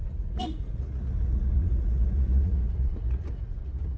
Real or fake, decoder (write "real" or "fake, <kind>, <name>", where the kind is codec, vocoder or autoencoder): fake, vocoder, Vocos